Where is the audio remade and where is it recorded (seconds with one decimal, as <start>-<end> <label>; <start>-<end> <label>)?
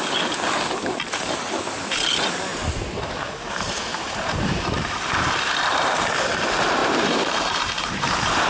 0.0-2.5 recorded; 2.5-3.1 remade; 3.1-3.9 recorded; 3.9-5.9 remade; 5.9-6.8 recorded; 6.8-8.5 remade